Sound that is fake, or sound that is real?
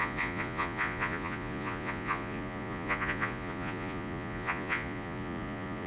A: fake